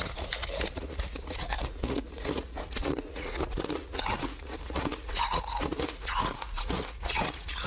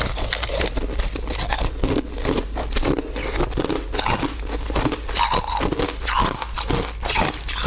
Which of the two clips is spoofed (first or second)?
first